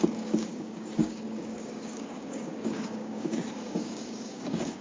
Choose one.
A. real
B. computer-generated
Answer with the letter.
B